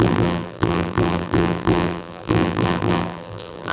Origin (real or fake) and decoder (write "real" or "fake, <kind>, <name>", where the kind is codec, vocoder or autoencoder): fake, vocoder, BigVGAN v2